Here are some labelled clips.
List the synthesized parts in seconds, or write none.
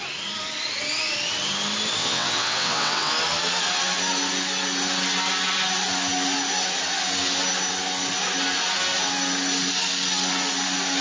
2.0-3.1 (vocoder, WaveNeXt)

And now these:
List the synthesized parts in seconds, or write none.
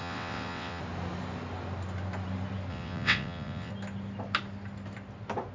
0.0-0.8 (vocoder, WaveNeXt); 2.7-3.7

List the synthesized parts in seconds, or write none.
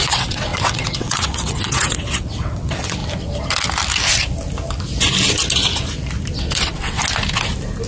0.0-3.0 (vocoder, WaveNeXt); 6.6-7.0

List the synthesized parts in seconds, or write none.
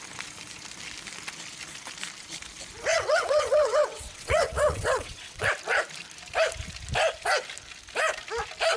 2.9-5.5 (vocoder, WaveNeXt)